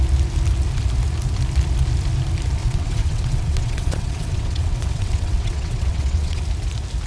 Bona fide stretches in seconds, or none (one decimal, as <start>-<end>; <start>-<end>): 0.0-2.6; 6.4-7.1